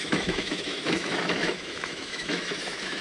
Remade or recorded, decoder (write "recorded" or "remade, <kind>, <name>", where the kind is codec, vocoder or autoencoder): remade, autoencoder, DAC-VAE